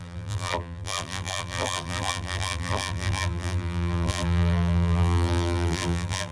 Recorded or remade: remade